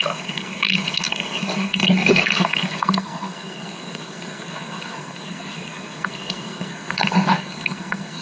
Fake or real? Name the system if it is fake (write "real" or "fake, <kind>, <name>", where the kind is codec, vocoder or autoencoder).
fake, codec, SNAC